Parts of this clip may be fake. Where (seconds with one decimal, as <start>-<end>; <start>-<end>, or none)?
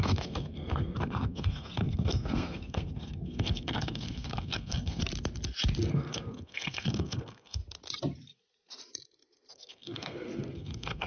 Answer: 0.0-5.0; 5.9-7.6; 9.5-11.1